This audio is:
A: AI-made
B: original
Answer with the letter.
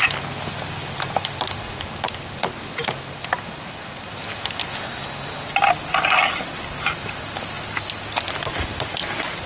B